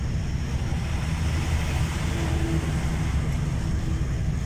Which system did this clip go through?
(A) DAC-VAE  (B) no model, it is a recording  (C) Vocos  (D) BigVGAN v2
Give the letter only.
B